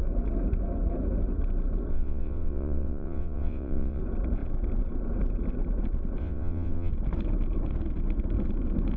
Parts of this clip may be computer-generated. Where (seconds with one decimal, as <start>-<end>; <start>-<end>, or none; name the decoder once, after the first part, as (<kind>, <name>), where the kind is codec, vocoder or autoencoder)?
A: 1.9-4.0 (vocoder, WaveNeXt); 6.2-6.9